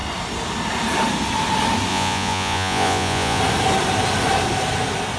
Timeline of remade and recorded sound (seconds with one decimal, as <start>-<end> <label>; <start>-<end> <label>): 0.0-1.9 recorded; 1.9-3.4 remade; 3.4-5.2 recorded